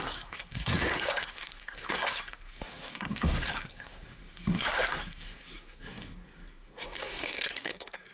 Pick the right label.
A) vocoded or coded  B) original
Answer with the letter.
A